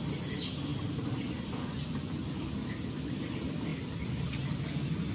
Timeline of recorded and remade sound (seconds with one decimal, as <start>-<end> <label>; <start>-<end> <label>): 0.0-5.1 recorded